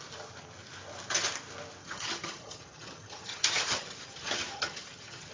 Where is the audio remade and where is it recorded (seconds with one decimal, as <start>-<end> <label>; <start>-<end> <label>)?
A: 0.0-1.8 recorded; 1.8-5.3 remade